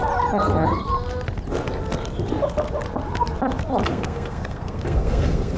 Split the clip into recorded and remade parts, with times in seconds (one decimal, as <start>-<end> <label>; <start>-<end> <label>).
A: 0.0-3.9 recorded; 3.9-5.6 remade